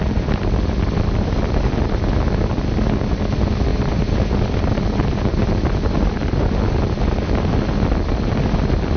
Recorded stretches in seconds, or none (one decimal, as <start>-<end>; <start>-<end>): 0.0-9.0